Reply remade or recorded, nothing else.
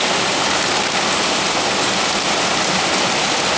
recorded